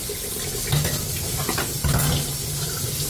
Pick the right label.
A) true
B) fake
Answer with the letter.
A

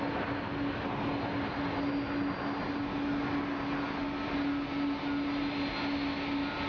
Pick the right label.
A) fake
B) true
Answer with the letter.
B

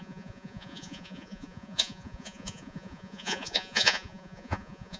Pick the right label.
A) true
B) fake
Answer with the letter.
B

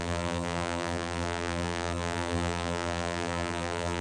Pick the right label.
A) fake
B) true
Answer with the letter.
A